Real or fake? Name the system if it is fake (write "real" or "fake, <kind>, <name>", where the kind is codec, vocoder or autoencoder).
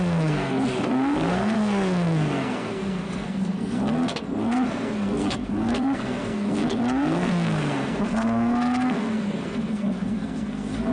fake, codec, SNAC